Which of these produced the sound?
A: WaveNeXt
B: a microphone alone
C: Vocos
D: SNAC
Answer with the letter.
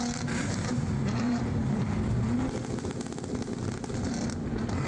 B